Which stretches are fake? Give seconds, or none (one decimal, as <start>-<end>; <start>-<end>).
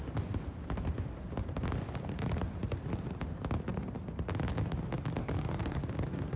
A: 5.2-5.8